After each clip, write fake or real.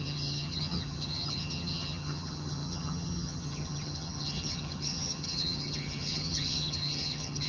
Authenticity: fake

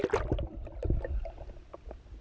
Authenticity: real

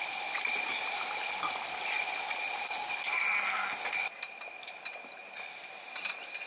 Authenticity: real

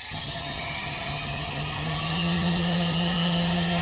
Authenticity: fake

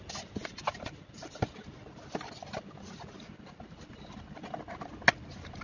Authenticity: real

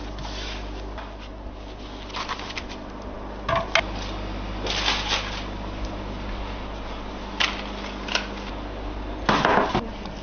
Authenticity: real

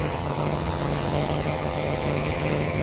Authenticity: fake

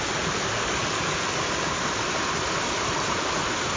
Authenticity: real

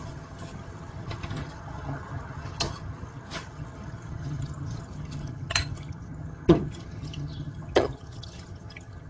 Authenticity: fake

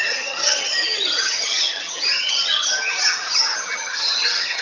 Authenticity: fake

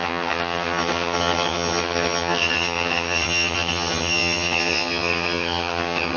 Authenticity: fake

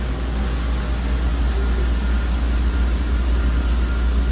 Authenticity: real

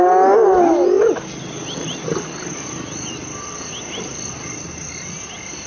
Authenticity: real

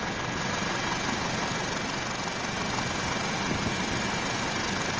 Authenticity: real